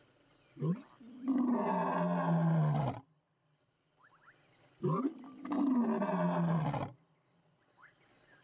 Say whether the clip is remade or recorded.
recorded